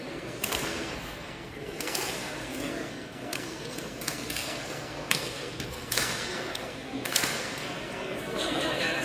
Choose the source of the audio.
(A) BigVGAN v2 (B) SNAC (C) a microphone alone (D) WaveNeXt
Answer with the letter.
B